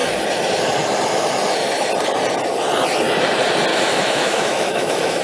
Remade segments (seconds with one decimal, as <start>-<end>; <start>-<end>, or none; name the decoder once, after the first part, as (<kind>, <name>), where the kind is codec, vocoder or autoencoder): 3.7-5.2 (autoencoder, DAC-VAE)